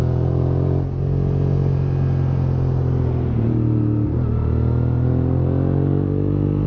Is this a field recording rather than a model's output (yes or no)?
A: yes